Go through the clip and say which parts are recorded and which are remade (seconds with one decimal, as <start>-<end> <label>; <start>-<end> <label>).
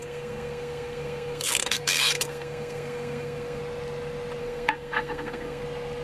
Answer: 0.0-3.6 remade; 3.6-4.4 recorded; 4.4-5.6 remade; 5.6-6.0 recorded